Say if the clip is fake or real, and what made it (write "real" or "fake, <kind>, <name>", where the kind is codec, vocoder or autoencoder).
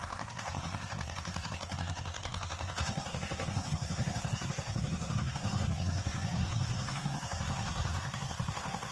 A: fake, codec, SNAC